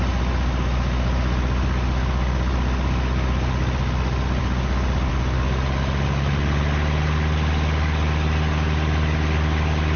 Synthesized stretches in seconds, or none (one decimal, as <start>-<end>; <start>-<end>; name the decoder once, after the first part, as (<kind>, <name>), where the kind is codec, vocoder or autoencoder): none